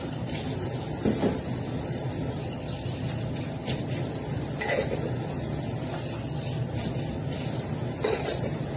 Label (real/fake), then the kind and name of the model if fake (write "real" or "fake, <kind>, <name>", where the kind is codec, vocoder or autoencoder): real